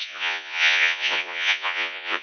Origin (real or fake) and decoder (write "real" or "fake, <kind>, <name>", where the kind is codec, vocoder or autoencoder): fake, vocoder, Vocos